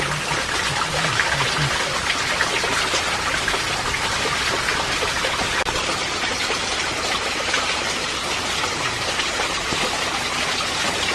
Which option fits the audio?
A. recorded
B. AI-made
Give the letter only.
A